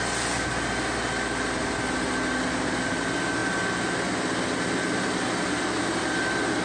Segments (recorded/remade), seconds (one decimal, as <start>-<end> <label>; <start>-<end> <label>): 0.0-6.6 recorded